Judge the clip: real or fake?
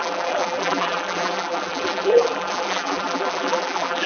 fake